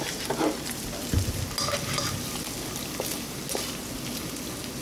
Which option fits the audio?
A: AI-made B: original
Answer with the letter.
B